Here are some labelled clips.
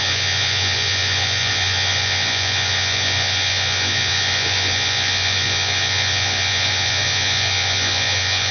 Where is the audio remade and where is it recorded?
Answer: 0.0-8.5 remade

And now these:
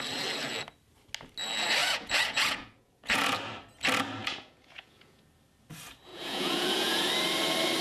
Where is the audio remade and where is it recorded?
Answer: 0.0-1.8 recorded; 1.8-3.2 remade; 3.2-4.2 recorded; 4.2-5.2 remade; 5.2-6.1 recorded; 6.1-7.1 remade; 7.1-7.8 recorded

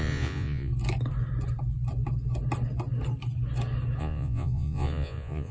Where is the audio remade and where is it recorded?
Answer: 0.0-0.7 remade; 0.7-4.0 recorded; 4.0-5.5 remade

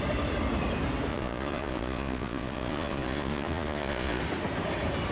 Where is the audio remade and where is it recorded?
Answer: 0.0-1.1 recorded; 1.1-4.2 remade; 4.2-5.1 recorded

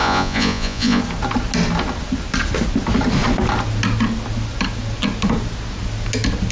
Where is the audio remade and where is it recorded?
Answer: 0.0-1.0 remade; 1.0-6.5 recorded

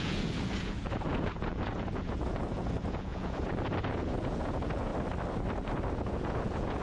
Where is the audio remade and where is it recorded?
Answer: 0.0-4.9 remade; 4.9-5.9 recorded; 5.9-6.8 remade

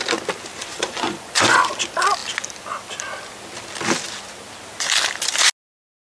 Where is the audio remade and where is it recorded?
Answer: 0.0-0.6 recorded; 0.6-1.7 remade; 1.7-6.1 recorded

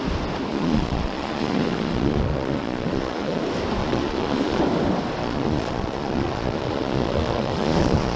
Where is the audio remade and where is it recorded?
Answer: 0.0-0.5 recorded; 0.5-3.4 remade; 3.4-3.8 recorded; 3.8-4.6 remade; 4.6-5.2 recorded; 5.2-8.2 remade